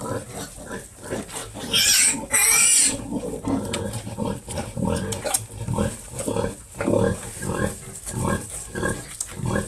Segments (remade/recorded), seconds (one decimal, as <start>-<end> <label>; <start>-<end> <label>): 0.0-9.7 recorded